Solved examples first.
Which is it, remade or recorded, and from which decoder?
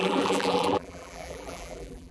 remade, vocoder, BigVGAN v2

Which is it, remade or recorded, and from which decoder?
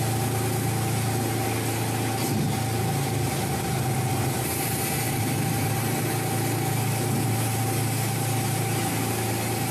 recorded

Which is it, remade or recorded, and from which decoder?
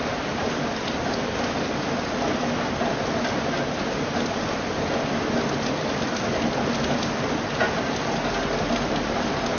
recorded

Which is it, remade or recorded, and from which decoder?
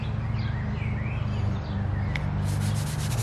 recorded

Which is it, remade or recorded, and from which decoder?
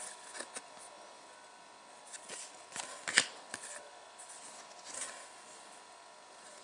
recorded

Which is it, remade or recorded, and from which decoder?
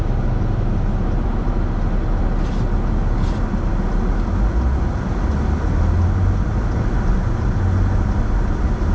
recorded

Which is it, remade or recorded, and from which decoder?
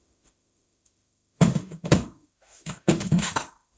remade, autoencoder, DAC-VAE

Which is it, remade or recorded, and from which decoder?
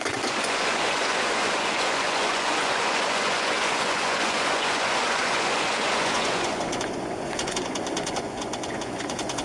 remade, vocoder, Vocos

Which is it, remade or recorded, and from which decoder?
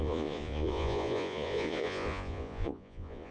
remade, vocoder, Vocos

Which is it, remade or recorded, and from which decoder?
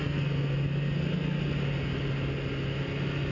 recorded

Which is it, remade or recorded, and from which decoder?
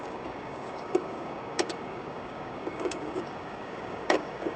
remade, codec, DAC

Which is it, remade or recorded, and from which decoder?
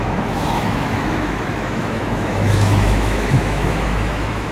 remade, autoencoder, DAC-VAE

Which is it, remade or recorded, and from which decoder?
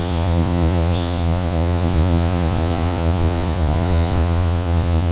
remade, vocoder, Vocos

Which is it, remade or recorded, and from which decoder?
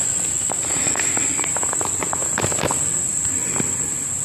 recorded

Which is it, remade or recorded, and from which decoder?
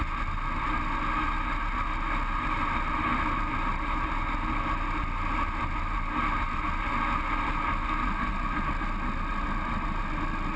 recorded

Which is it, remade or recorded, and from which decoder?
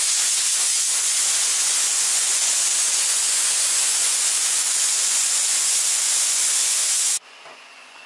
remade, vocoder, Vocos